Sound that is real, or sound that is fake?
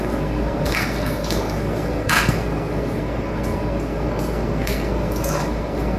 fake